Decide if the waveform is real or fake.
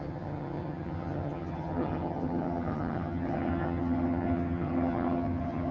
fake